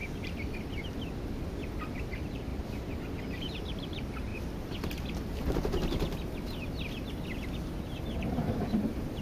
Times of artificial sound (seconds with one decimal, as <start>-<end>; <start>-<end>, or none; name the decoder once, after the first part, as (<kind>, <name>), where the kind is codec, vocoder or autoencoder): 1.7-2.5 (vocoder, BigVGAN v2); 3.2-4.3; 8.0-9.2